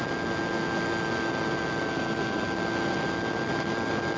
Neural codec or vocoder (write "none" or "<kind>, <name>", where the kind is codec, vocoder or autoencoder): none